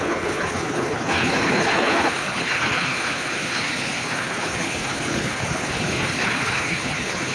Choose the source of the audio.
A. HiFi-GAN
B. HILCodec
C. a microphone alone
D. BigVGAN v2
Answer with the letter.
B